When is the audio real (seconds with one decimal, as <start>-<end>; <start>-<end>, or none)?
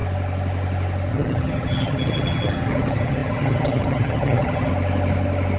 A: 0.0-1.1; 4.7-5.6